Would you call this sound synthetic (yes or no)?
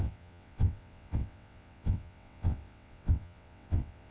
yes